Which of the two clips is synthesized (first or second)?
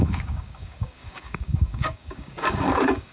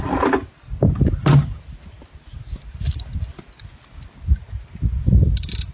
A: first